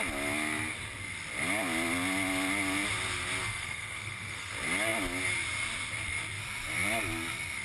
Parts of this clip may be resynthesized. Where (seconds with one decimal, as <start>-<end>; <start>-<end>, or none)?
3.4-4.5